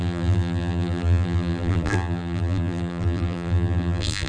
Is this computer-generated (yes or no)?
yes